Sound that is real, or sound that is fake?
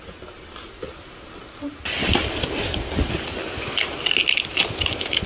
real